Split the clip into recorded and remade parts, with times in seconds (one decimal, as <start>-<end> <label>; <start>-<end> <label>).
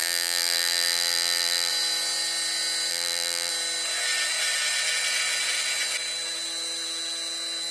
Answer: 0.0-1.7 remade; 1.7-2.9 recorded; 2.9-3.5 remade; 3.5-7.7 recorded